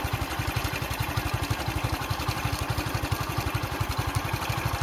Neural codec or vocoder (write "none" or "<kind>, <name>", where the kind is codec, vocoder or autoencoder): none